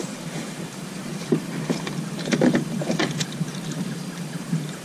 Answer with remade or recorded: remade